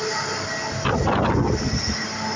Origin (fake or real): real